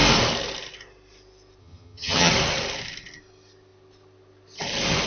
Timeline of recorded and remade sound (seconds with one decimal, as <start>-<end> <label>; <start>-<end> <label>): 0.0-1.6 recorded; 1.6-2.3 remade; 2.3-5.1 recorded